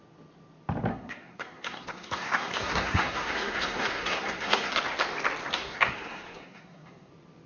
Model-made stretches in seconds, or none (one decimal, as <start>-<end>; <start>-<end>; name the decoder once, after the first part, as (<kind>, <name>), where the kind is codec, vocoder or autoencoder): 0.9-4.8 (codec, SNAC); 5.5-7.1